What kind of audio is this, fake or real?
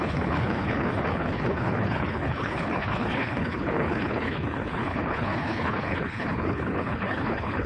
fake